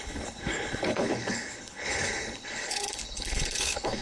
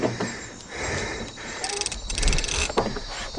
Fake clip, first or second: first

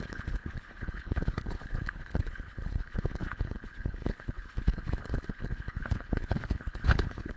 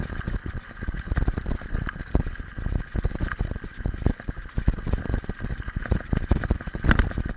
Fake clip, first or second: first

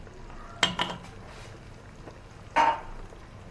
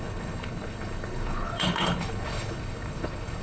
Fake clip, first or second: second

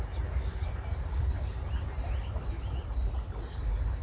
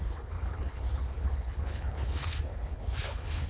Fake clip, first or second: second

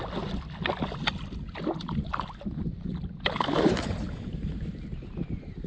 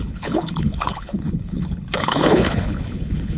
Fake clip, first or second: second